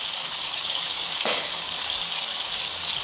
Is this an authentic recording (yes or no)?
no